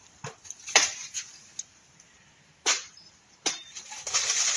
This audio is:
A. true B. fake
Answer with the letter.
B